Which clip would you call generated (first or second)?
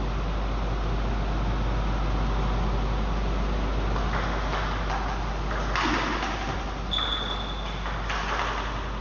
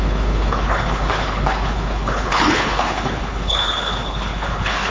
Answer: second